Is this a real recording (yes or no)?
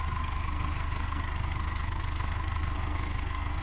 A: no